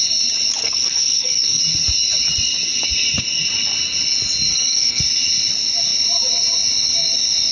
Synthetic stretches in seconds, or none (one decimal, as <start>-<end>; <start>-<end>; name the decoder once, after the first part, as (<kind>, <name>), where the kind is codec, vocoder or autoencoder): 0.6-1.6 (codec, SNAC); 4.5-5.0